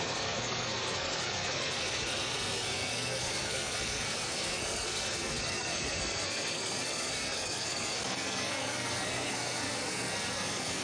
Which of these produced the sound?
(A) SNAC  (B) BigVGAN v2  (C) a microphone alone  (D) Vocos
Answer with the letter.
A